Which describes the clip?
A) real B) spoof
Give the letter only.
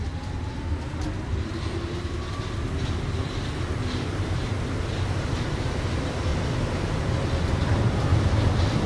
A